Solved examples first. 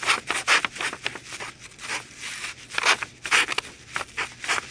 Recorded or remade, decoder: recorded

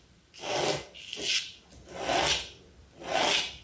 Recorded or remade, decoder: recorded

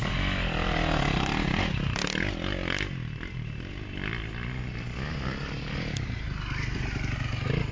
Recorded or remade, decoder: recorded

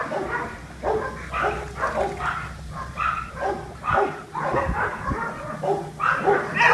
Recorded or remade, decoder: recorded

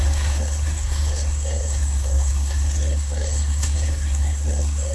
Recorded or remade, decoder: remade, codec, SNAC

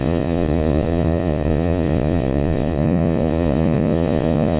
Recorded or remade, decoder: remade, vocoder, Vocos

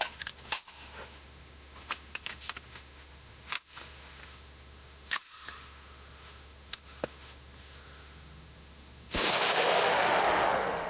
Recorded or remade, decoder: remade, autoencoder, DAC-VAE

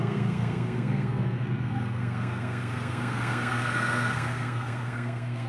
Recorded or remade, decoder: remade, codec, SNAC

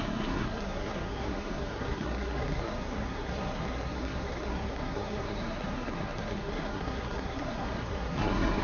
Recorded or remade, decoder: remade, codec, SNAC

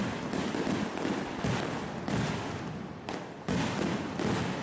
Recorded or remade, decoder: recorded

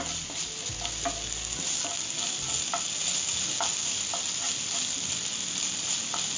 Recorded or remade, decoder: recorded